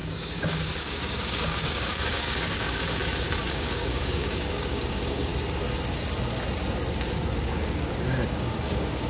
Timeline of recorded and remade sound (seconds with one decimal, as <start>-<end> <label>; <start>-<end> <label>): 0.0-3.0 remade; 3.0-3.5 recorded; 3.5-5.3 remade; 5.3-7.4 recorded; 7.4-9.1 remade

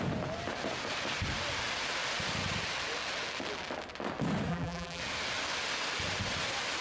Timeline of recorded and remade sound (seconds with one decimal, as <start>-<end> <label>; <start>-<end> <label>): 0.0-4.5 recorded; 4.5-5.0 remade; 5.0-6.8 recorded

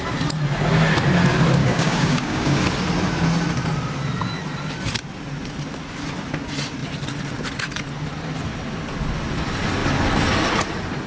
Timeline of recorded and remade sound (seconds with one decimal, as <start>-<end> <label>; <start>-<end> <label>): 0.0-1.6 recorded; 1.6-2.6 remade; 2.6-11.1 recorded

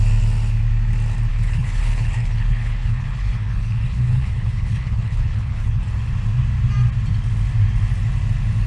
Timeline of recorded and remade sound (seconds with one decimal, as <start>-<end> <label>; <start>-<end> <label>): 0.0-1.3 recorded; 1.3-5.8 remade; 5.8-8.7 recorded

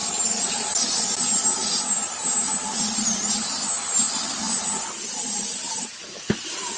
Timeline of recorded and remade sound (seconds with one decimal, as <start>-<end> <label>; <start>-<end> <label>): 0.0-6.8 recorded

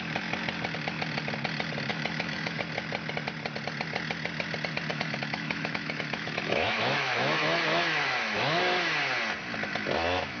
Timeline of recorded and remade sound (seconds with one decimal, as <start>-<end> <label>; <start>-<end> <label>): 0.0-1.9 recorded; 1.9-2.6 remade; 2.6-4.9 recorded; 4.9-8.6 remade; 8.6-10.4 recorded

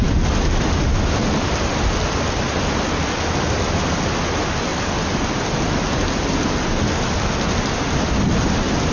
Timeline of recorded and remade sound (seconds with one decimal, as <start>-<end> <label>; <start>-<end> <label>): 0.0-8.9 recorded

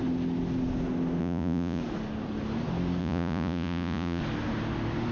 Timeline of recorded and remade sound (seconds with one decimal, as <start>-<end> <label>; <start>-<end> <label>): 0.0-1.2 recorded; 1.2-1.8 remade; 1.8-3.0 recorded; 3.0-4.2 remade; 4.2-5.1 recorded